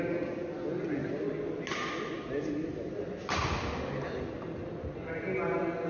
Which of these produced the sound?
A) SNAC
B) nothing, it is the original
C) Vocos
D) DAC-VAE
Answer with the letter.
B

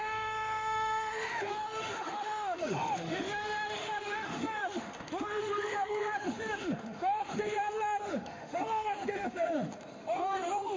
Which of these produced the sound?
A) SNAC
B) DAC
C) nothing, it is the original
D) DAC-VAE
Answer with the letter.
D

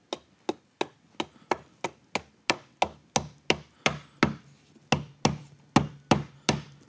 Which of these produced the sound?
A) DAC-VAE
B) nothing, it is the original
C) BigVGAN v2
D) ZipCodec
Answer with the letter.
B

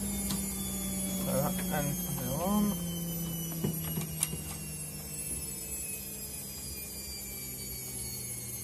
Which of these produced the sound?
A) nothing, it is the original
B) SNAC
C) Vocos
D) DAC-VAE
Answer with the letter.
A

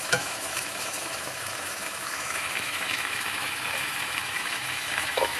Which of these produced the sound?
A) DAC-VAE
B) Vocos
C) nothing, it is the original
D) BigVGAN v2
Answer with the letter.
A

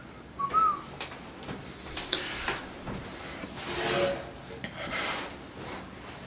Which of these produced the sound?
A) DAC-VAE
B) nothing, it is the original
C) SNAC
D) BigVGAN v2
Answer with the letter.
B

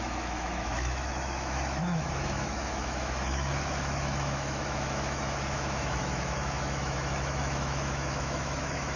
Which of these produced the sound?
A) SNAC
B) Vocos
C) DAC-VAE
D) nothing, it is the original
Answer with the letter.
C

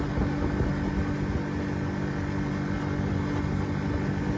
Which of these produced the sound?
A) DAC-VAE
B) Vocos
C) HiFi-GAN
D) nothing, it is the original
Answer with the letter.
D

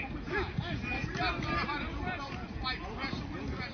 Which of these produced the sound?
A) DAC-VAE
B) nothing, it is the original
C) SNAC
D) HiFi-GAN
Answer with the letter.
B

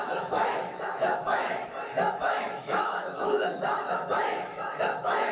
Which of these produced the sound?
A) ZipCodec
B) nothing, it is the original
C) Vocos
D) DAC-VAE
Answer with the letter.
D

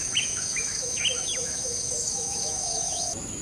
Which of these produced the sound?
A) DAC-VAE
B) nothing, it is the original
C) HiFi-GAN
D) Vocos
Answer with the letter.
A